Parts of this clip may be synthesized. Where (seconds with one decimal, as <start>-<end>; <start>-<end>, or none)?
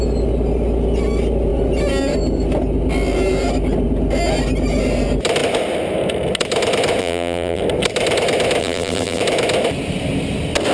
7.0-7.6; 8.6-9.2